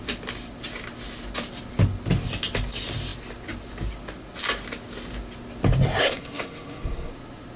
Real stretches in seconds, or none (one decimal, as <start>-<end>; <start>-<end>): 0.0-6.0; 7.1-7.6